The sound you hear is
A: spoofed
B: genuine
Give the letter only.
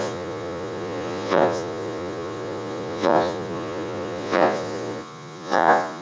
A